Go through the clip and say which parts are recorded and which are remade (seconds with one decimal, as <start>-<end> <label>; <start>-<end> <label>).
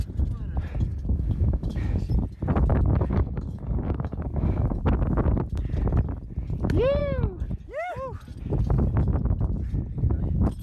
0.0-0.9 recorded; 0.9-2.1 remade; 2.1-2.7 recorded; 2.7-4.8 remade; 4.8-7.0 recorded; 7.0-7.6 remade; 7.6-10.6 recorded